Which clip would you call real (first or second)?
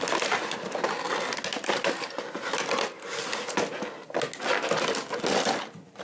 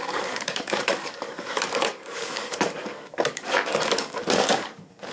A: first